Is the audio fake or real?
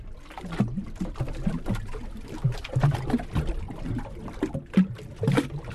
real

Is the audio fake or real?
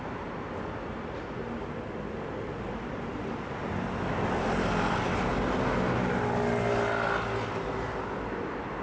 real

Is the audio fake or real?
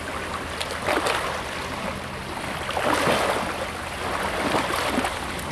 real